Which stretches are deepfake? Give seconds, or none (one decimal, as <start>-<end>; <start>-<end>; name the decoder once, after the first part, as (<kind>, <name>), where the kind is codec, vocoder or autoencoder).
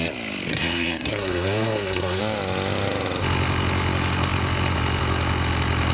0.5-2.2 (codec, SNAC)